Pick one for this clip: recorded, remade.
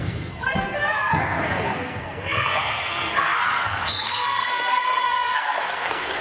remade